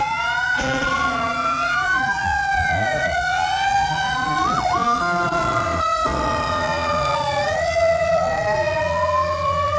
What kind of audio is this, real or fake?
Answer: fake